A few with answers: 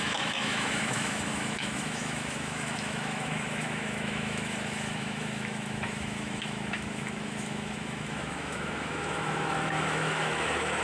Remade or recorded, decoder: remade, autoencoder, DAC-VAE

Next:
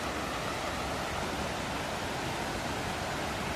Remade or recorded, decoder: recorded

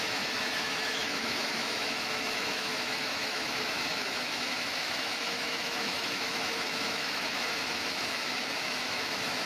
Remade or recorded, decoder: remade, autoencoder, DAC-VAE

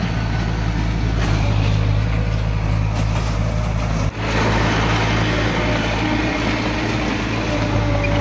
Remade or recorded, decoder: recorded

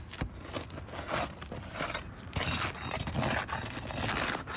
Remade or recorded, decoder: recorded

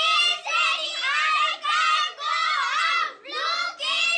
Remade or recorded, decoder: recorded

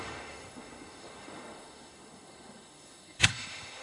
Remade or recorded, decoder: remade, autoencoder, DAC-VAE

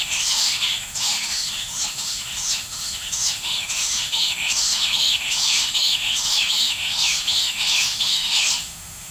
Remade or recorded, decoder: remade, autoencoder, DAC-VAE